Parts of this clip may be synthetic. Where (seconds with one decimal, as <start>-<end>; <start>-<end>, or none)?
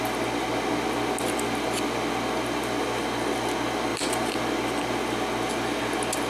none